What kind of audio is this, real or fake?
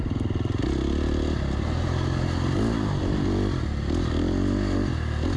real